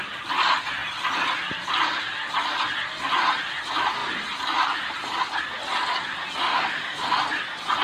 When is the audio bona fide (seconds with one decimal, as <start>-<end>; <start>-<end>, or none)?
0.0-6.4; 7.2-7.8